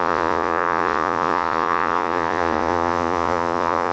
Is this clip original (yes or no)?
no